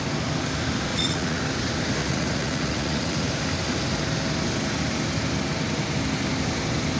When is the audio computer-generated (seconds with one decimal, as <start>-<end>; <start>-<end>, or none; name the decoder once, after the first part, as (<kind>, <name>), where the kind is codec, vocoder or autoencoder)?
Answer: 0.9-1.4 (vocoder, Vocos); 2.0-3.3